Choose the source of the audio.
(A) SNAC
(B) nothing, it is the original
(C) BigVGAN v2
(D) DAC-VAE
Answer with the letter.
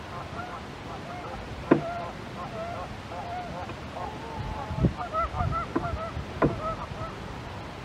B